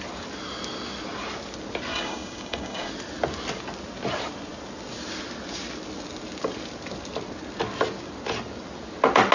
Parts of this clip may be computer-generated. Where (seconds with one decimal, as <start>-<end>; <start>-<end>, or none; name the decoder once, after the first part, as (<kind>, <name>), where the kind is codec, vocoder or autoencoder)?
1.9-2.9 (codec, DAC)